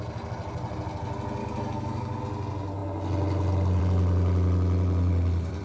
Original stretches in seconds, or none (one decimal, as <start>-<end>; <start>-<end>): 0.0-1.4; 2.2-5.6